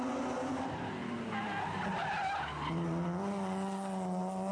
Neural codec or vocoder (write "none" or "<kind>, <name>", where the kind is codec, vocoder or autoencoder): none